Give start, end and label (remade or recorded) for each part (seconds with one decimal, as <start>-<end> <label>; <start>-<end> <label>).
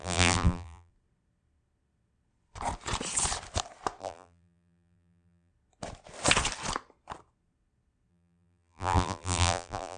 0.0-0.9 remade; 0.9-4.0 recorded; 4.0-5.5 remade; 5.5-8.1 recorded; 8.1-10.0 remade